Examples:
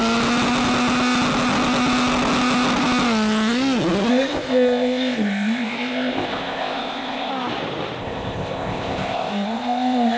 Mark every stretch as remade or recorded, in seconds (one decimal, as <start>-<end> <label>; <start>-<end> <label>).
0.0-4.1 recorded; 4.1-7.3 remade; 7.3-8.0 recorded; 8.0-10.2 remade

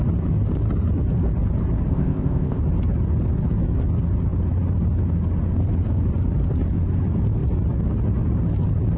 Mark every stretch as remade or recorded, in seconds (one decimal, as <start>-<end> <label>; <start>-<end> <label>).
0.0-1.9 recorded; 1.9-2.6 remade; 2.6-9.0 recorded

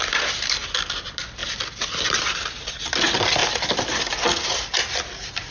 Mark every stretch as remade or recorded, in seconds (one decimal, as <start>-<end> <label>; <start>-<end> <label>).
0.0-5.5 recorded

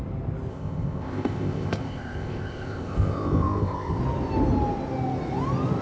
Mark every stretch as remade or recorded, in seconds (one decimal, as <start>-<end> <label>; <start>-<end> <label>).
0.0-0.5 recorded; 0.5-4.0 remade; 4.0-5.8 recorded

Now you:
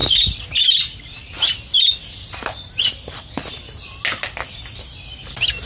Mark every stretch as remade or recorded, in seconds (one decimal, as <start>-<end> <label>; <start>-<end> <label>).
0.0-5.7 recorded

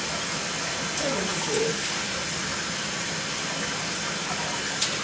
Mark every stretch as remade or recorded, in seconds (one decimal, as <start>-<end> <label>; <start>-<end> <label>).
0.0-5.0 recorded

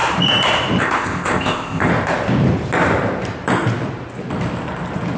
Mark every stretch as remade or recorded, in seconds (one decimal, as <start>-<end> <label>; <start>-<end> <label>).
0.0-0.8 recorded; 0.8-1.9 remade; 1.9-5.2 recorded

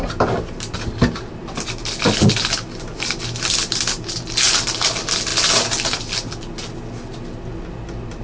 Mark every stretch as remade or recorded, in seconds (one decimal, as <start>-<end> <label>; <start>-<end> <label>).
0.0-8.2 recorded